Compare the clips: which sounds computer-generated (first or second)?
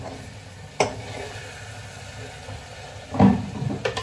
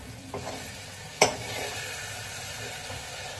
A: second